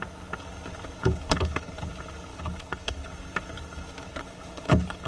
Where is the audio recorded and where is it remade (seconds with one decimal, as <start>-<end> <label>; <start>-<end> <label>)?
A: 0.0-1.0 recorded; 1.0-1.9 remade; 1.9-2.3 recorded; 2.3-3.1 remade; 3.1-4.1 recorded; 4.1-5.1 remade